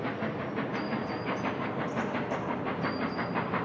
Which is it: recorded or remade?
recorded